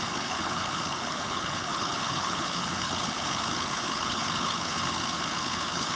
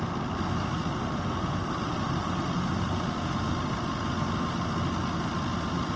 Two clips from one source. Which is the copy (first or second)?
first